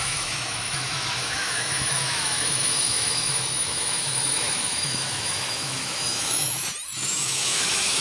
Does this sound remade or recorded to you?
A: remade